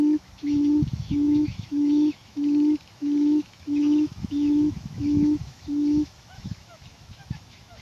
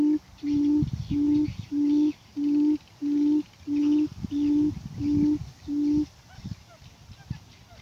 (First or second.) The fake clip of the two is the first